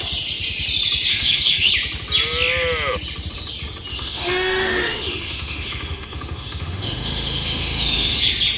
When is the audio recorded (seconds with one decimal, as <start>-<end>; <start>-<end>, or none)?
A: 0.0-1.1; 1.7-3.9; 8.2-8.6

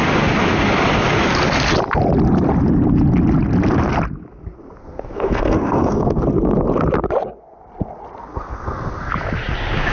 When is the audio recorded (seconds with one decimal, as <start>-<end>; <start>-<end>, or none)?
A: 0.0-4.8; 6.2-8.3; 9.1-9.9

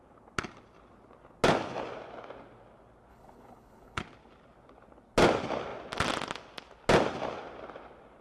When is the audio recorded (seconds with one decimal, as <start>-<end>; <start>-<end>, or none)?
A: 0.0-3.1; 4.0-8.2

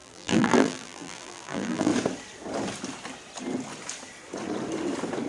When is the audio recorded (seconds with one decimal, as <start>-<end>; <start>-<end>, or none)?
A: 1.9-5.3

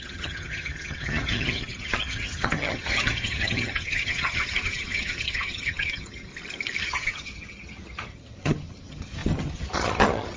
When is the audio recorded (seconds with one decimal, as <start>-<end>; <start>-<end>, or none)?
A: 6.3-6.8

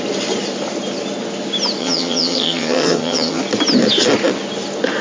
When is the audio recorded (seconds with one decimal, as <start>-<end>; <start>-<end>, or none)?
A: 0.0-1.8; 3.4-5.0